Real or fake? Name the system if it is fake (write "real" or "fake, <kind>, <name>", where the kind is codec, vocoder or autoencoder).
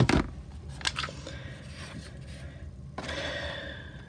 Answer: real